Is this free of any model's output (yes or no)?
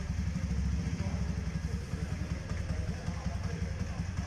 yes